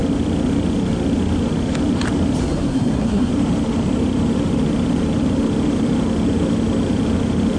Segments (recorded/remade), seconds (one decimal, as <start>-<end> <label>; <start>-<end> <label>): 0.0-2.4 recorded; 2.4-3.3 remade; 3.3-7.6 recorded